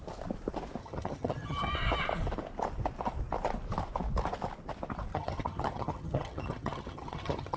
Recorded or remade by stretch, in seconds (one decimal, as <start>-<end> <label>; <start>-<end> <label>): 0.0-0.8 recorded; 0.8-1.7 remade; 1.7-5.1 recorded; 5.1-7.6 remade